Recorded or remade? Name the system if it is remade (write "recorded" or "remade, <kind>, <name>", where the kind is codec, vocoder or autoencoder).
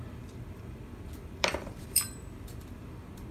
remade, vocoder, BigVGAN v2